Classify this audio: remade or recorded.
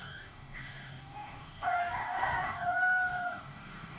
remade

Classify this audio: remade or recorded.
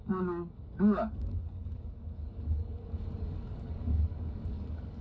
remade